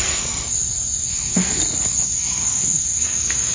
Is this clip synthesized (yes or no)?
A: yes